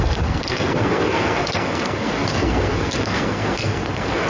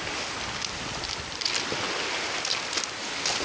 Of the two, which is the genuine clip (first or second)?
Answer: second